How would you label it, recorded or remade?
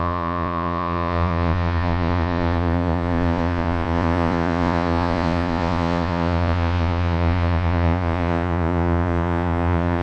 remade